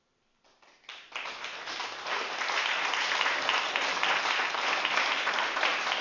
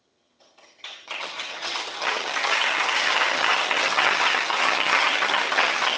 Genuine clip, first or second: first